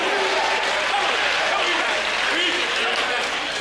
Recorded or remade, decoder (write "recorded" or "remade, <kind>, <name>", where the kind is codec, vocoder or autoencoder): recorded